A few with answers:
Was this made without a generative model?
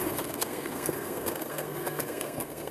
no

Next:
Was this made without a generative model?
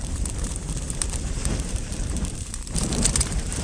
no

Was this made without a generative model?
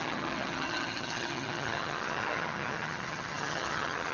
no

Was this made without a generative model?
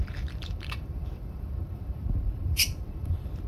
no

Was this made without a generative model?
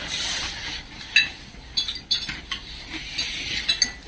yes